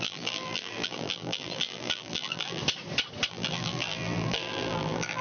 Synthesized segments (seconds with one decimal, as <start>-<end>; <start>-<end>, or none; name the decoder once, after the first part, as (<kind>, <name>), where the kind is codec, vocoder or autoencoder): 0.0-2.6 (vocoder, BigVGAN v2); 3.3-5.2